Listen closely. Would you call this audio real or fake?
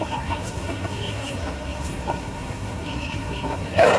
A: fake